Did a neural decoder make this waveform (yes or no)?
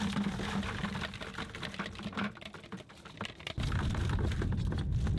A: no